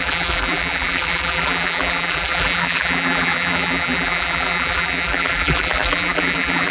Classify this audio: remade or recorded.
remade